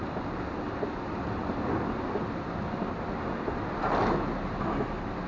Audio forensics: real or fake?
real